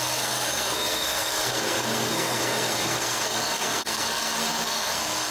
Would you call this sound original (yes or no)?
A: no